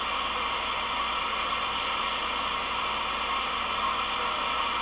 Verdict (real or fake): real